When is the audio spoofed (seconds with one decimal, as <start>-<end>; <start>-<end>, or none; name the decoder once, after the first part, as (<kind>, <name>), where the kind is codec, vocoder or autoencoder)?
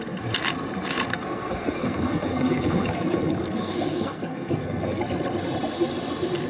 1.1-5.0 (codec, SNAC)